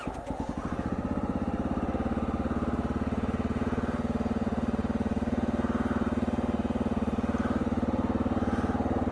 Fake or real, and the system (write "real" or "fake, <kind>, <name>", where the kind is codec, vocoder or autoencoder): real